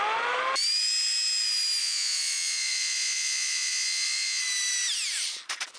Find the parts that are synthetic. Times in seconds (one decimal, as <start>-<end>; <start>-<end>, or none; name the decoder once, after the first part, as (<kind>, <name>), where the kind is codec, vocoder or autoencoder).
1.8-4.4 (vocoder, Vocos)